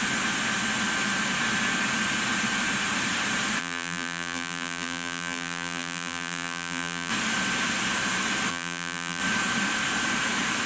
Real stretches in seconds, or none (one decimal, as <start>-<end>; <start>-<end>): 0.0-3.6; 7.1-8.5; 9.2-10.7